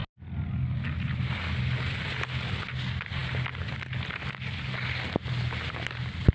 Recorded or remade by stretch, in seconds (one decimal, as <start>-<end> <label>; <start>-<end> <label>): 0.0-6.3 recorded